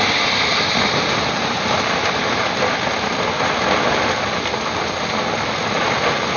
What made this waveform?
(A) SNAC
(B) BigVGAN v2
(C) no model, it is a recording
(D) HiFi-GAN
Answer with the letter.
C